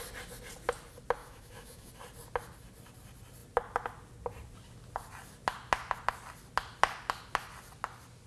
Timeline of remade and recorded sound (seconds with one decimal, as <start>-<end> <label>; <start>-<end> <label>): 0.0-1.2 recorded; 1.2-1.9 remade; 1.9-8.3 recorded